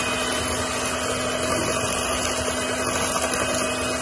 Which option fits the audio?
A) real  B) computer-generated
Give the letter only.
A